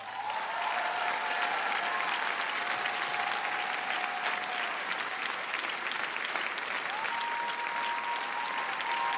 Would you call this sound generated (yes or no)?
no